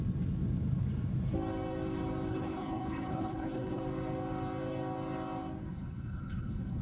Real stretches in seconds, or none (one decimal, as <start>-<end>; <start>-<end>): 0.0-2.3; 3.8-5.6